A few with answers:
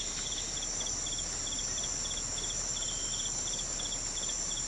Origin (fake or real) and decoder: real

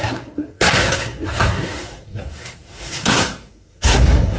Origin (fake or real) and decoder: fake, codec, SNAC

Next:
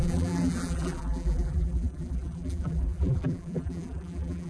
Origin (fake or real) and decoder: fake, vocoder, BigVGAN v2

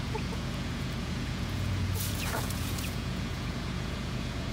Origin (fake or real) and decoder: fake, vocoder, Vocos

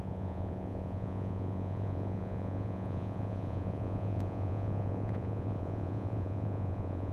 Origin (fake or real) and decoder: fake, vocoder, Vocos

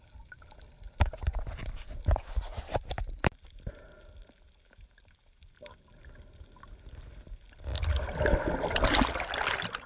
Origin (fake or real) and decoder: real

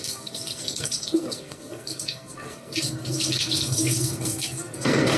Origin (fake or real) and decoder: fake, codec, SNAC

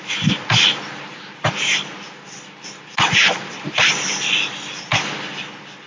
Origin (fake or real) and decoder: real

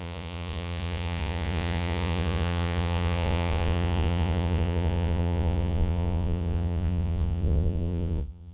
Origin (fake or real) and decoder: fake, vocoder, Vocos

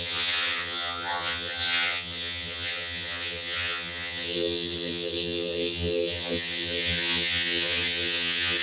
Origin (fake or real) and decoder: fake, vocoder, HiFi-GAN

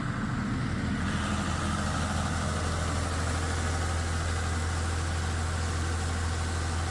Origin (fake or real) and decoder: real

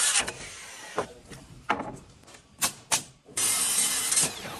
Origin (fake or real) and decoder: fake, vocoder, BigVGAN v2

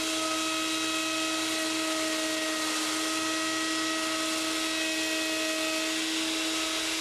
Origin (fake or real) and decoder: real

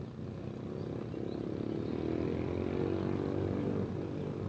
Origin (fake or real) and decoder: real